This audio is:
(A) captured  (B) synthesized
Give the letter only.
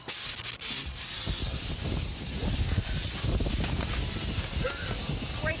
A